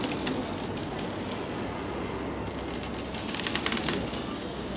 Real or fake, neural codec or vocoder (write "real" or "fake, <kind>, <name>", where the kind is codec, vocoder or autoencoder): real